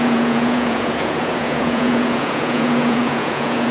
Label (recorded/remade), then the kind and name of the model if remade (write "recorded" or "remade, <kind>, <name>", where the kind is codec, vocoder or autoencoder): remade, vocoder, Vocos